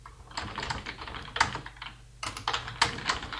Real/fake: real